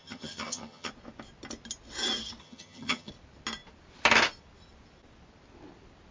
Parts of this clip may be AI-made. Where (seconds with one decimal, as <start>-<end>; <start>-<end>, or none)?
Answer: 0.0-0.9; 2.4-3.1